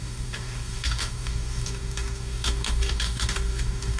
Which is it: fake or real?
fake